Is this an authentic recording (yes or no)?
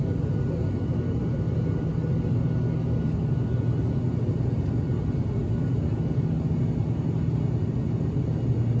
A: yes